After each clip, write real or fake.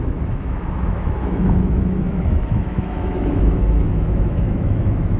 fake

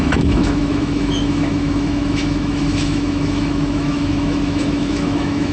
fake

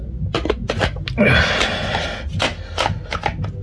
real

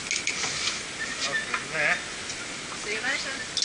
real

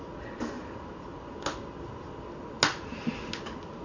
real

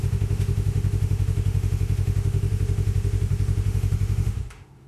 fake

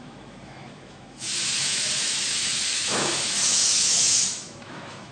fake